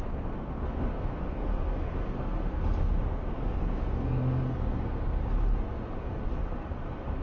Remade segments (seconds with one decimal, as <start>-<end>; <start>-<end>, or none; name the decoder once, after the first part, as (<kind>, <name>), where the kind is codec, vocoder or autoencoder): 0.0-5.2 (codec, SNAC)